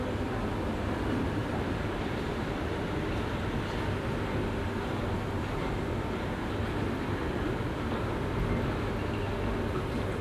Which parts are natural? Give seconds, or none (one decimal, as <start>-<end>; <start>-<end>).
0.0-1.4; 2.7-10.2